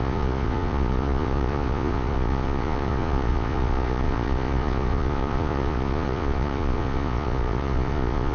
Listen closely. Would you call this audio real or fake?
fake